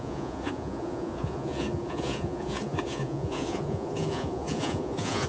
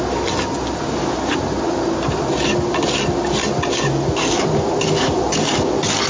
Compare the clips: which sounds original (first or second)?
second